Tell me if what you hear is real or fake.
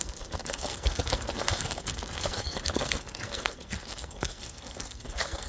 fake